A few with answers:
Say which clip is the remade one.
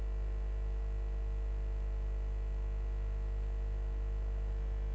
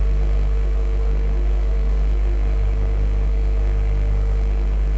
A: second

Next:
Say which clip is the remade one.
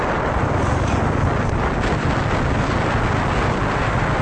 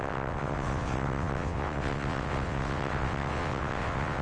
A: second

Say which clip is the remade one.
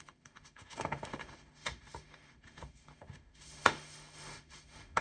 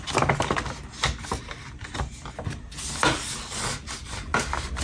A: first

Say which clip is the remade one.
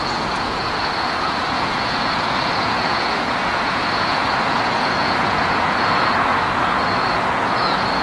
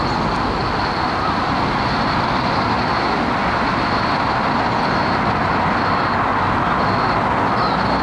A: first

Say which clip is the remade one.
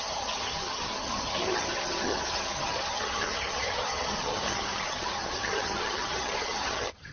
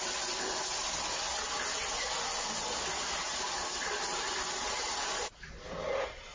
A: first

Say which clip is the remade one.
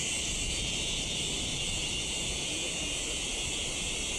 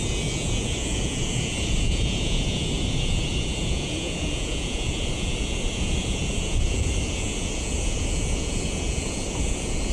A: second